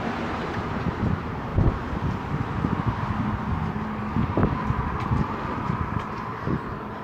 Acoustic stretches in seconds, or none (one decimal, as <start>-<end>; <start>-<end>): 1.5-3.7; 4.4-5.6

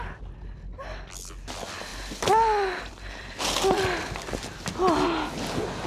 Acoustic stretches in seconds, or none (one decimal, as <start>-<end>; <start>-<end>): 0.0-5.9

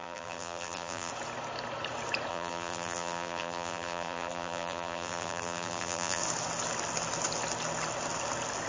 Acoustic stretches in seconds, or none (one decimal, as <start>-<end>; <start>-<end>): 1.1-2.3; 6.2-8.7

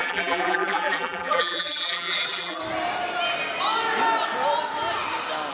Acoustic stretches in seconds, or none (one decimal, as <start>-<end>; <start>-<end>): 2.6-5.5

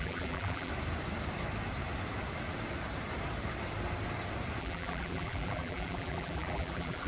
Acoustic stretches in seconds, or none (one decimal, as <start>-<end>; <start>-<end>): 0.7-4.6

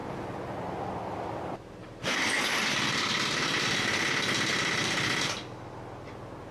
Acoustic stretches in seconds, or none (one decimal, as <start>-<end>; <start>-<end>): 0.0-1.8; 5.2-6.5